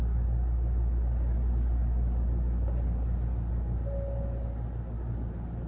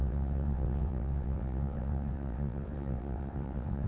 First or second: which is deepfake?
second